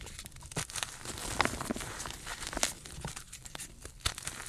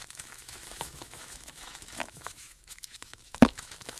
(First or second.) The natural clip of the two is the first